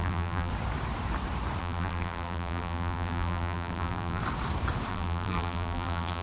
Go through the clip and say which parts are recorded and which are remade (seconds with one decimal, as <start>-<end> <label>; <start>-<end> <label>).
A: 0.0-0.5 remade; 0.5-1.6 recorded; 1.6-4.2 remade; 4.2-4.9 recorded; 4.9-6.2 remade